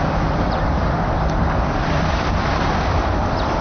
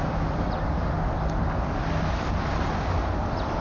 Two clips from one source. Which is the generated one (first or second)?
first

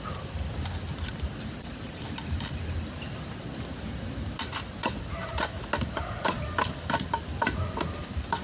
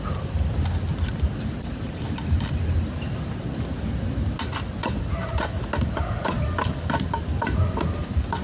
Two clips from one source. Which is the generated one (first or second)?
first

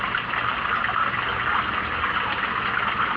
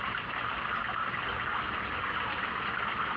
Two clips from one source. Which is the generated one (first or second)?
second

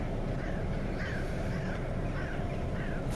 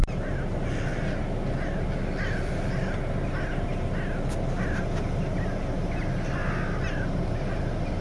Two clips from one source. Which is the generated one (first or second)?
first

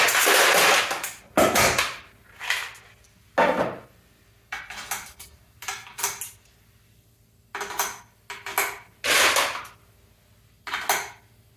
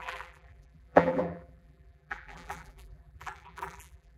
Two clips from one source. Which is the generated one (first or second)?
second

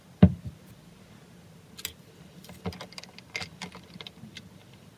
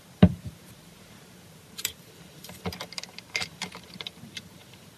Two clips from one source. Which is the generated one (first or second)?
second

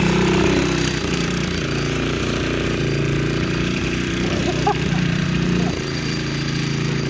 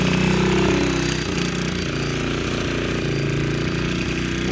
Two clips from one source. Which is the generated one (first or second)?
first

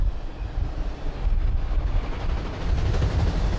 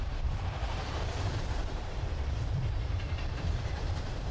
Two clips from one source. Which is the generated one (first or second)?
second